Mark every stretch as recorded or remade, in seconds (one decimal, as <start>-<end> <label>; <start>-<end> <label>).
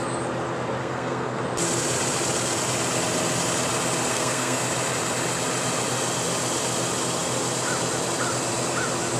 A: 0.0-0.8 recorded; 0.8-1.4 remade; 1.4-4.1 recorded; 4.1-4.6 remade; 4.6-9.2 recorded